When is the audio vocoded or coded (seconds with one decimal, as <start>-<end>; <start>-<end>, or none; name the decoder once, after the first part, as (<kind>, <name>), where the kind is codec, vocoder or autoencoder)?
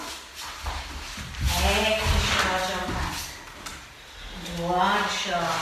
none